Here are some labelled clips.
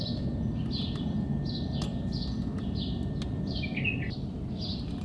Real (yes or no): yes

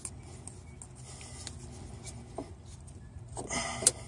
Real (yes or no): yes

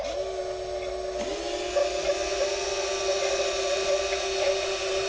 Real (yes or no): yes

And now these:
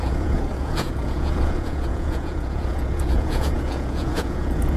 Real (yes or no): no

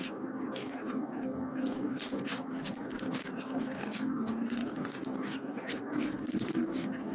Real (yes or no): no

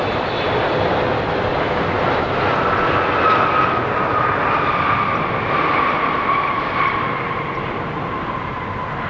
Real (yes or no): yes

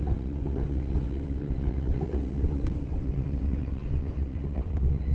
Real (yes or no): no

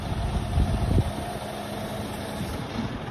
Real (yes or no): yes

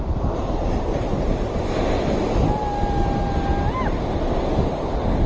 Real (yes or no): yes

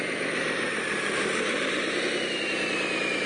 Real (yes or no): no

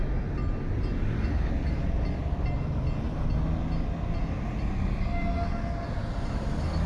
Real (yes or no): yes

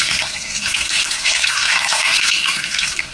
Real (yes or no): no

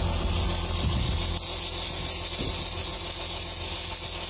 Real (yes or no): yes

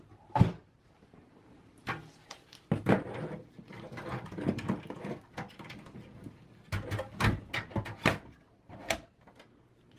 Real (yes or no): yes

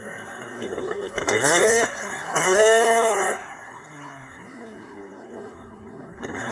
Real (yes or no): no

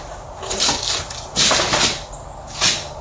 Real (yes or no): yes